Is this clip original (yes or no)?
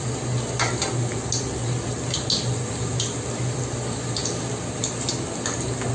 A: yes